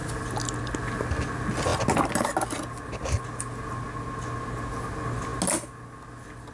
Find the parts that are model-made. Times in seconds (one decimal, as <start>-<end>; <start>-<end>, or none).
none